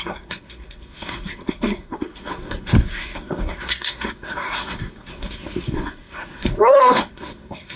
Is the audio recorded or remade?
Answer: remade